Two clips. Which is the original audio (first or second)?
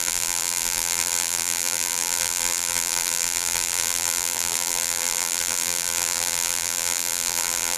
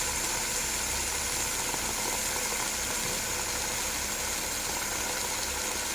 second